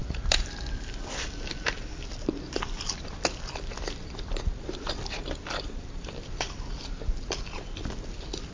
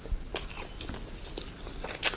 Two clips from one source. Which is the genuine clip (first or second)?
second